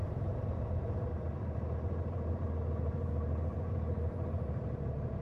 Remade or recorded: remade